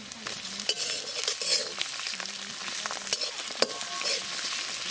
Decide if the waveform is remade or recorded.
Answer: recorded